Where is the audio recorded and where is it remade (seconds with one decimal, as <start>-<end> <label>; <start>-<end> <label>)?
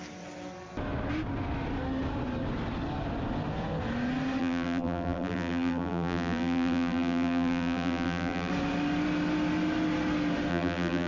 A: 0.0-4.4 recorded; 4.4-8.5 remade; 8.5-10.5 recorded; 10.5-11.1 remade